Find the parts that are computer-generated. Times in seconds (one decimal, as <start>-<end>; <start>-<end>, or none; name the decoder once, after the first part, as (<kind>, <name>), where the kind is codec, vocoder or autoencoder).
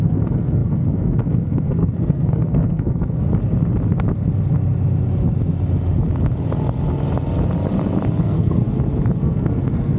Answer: 0.0-3.3 (codec, SNAC); 8.2-8.6; 9.2-10.0